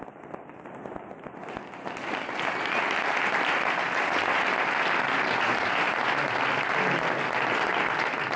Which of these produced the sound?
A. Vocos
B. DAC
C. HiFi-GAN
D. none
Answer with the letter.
D